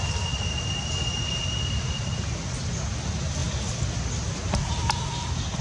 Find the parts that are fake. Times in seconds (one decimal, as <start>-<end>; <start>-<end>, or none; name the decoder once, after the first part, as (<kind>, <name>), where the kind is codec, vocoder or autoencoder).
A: none